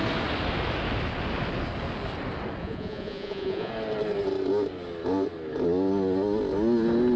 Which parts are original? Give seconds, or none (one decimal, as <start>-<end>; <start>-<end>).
0.0-2.6; 3.7-7.2